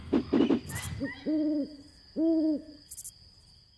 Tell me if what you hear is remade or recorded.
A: recorded